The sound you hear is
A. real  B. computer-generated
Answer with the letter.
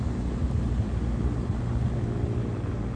A